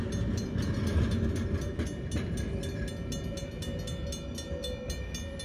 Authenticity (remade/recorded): recorded